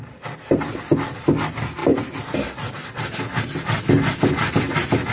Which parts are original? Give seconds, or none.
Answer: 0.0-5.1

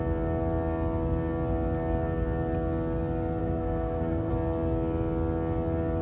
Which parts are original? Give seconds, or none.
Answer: 0.0-3.4; 4.3-6.0

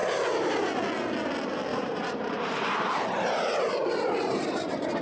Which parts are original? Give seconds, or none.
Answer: 0.7-1.7

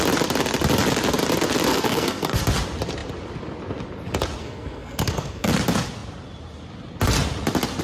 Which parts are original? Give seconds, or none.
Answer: 0.0-1.7; 2.4-4.4; 5.5-7.8

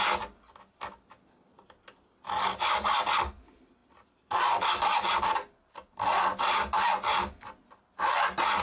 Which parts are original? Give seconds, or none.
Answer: 0.0-8.6

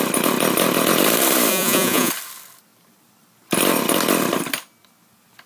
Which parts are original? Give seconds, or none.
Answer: 0.0-1.5; 2.1-5.5

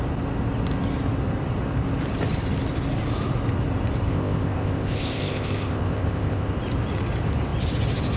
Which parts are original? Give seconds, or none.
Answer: 0.0-4.1; 6.5-8.2